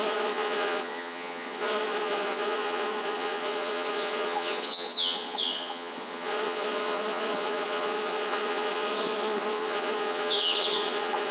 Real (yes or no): no